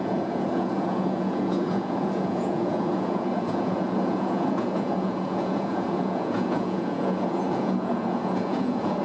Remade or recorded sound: remade